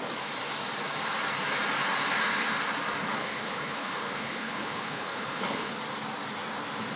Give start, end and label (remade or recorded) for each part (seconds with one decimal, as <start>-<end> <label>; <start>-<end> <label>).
0.0-3.2 recorded; 3.2-5.7 remade; 5.7-7.0 recorded